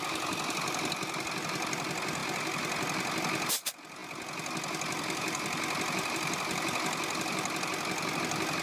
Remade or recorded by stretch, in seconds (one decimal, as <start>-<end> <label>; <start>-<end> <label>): 0.0-8.6 recorded